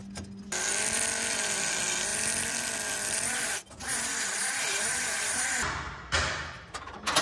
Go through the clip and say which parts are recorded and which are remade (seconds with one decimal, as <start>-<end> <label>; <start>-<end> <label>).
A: 0.0-7.2 recorded